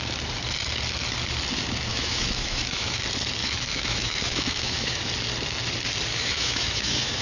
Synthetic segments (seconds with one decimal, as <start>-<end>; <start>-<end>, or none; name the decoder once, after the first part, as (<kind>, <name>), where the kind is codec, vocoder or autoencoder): 1.9-3.0 (autoencoder, DAC-VAE); 3.4-5.0; 6.1-7.2

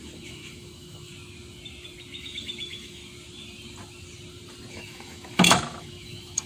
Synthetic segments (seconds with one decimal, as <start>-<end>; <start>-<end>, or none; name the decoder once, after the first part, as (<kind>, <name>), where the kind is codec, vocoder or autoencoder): 0.0-1.1 (autoencoder, DAC-VAE); 2.2-3.0; 4.7-6.5

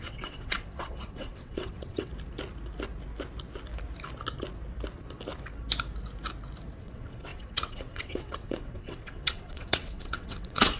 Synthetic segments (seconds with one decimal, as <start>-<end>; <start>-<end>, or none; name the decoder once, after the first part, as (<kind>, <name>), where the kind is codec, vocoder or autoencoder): 0.0-2.1 (vocoder, WaveNeXt); 6.8-10.8

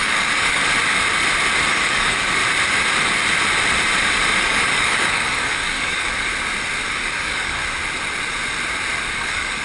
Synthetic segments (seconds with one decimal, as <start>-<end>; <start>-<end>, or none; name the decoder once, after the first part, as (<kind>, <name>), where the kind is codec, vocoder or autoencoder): 0.0-0.6 (codec, DAC); 1.7-2.4; 4.4-6.3; 6.9-7.6; 9.1-9.6

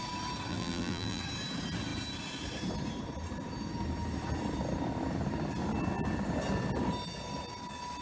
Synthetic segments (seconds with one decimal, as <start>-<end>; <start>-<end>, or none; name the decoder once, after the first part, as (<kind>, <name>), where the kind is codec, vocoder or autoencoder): 0.5-1.2 (vocoder, BigVGAN v2)

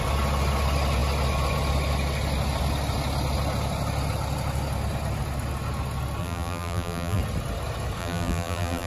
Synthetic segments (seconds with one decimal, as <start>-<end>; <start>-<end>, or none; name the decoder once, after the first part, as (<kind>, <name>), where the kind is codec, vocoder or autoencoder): 6.2-7.2 (vocoder, BigVGAN v2); 8.0-8.9